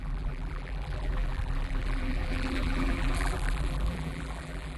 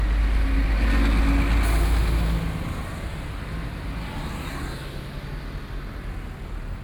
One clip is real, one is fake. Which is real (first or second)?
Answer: second